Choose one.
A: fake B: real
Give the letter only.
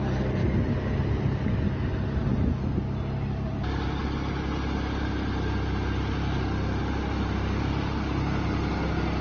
B